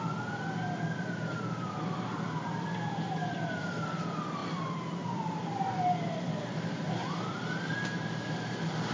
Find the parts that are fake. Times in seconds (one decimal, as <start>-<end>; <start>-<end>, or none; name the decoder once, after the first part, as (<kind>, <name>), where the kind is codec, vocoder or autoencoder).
none